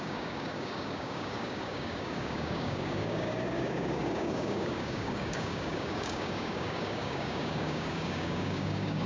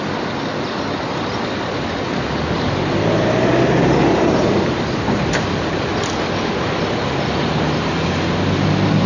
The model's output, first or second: first